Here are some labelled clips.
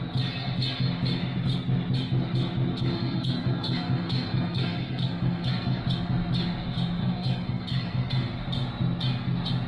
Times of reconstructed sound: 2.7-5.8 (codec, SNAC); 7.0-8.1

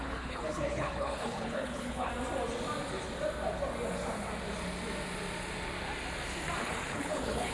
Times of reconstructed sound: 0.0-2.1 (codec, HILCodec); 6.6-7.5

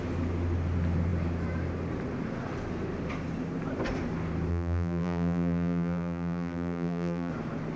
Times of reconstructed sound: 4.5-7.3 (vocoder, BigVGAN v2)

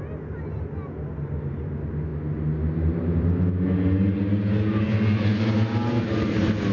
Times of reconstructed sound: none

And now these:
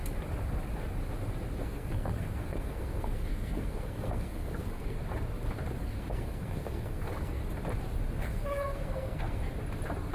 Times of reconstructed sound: 1.6-5.0 (codec, SNAC); 5.8-7.4; 8.2-9.4

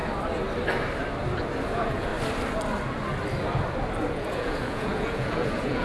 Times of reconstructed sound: 1.6-2.1 (vocoder, Vocos); 4.1-5.8

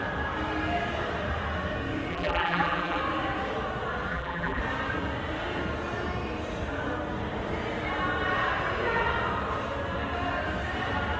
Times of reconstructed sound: 2.1-3.0 (vocoder, BigVGAN v2); 4.1-4.6